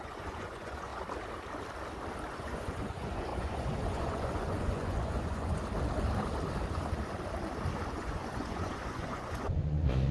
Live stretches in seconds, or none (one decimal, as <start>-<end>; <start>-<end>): 0.9-2.3; 5.6-7.9